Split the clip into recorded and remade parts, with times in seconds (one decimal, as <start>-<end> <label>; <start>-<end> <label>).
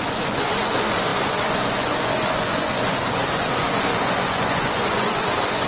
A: 0.0-5.7 remade